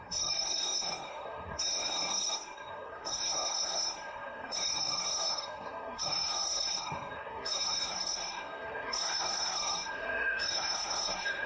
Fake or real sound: fake